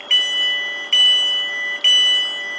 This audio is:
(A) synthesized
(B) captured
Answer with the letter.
B